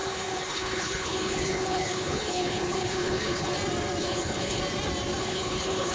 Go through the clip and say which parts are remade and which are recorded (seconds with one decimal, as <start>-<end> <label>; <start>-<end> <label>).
0.0-3.5 remade; 3.5-4.0 recorded; 4.0-4.6 remade; 4.6-5.2 recorded; 5.2-5.9 remade